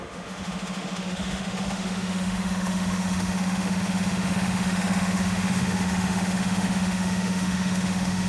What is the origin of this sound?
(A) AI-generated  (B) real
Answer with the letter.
A